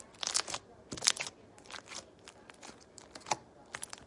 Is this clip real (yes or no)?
yes